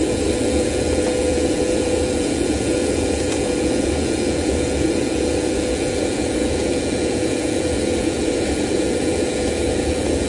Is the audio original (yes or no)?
no